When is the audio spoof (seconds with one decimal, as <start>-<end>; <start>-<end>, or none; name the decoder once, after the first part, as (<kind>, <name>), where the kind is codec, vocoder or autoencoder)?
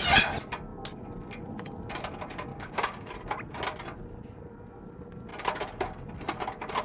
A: 2.5-3.1 (codec, DAC)